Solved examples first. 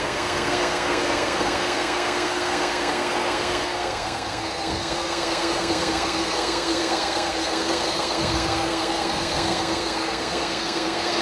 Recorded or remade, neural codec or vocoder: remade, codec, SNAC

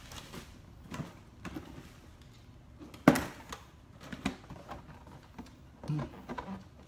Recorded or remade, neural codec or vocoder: recorded